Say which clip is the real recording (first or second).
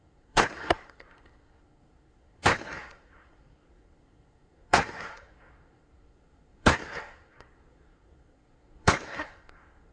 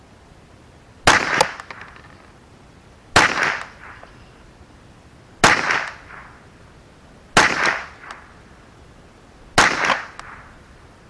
second